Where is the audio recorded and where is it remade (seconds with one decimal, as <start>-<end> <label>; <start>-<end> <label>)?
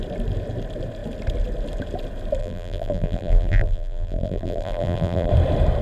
0.0-2.4 recorded; 2.4-5.3 remade; 5.3-5.8 recorded